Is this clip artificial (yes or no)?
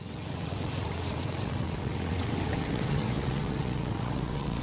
yes